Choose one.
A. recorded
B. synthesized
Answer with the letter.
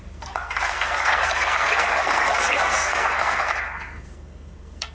B